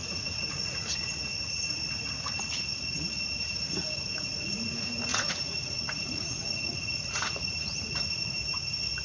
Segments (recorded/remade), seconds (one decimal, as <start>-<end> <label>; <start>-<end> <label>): 0.0-1.2 remade; 1.2-5.1 recorded; 5.1-8.3 remade; 8.3-9.0 recorded